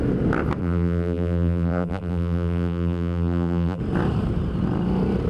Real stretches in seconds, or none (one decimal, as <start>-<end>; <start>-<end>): 0.0-0.6; 3.8-5.3